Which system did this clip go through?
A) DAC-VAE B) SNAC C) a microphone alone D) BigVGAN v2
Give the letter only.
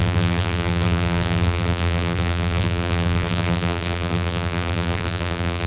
D